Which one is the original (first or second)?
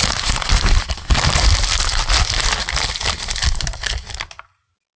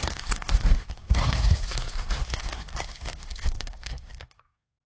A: first